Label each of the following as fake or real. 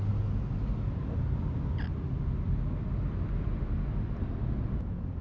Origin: real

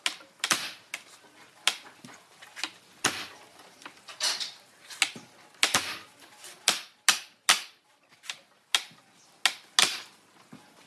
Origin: real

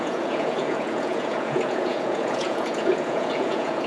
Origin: fake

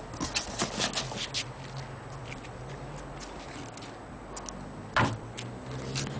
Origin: real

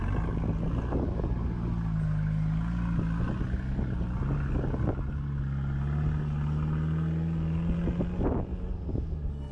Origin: real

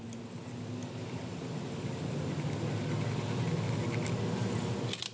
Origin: real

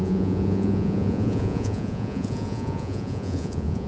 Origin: fake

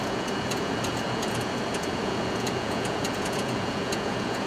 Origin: fake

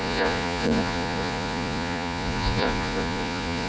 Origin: fake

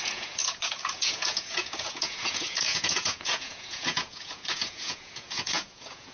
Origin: fake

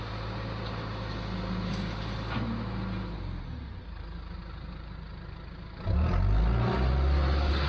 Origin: real